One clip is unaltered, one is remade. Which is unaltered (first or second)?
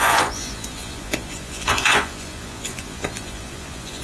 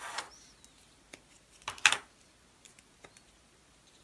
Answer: second